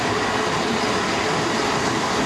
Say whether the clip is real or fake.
real